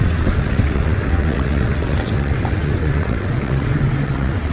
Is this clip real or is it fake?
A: fake